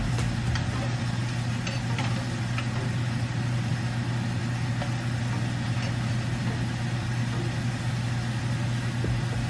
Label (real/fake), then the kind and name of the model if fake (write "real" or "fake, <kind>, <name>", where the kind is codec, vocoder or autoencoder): real